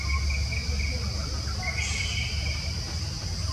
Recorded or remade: recorded